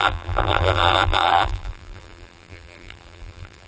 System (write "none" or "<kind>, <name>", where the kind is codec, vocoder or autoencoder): vocoder, BigVGAN v2